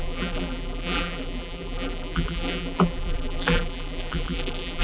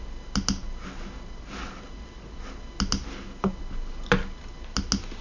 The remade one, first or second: first